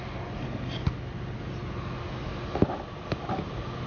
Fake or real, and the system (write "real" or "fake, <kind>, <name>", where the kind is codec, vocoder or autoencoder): real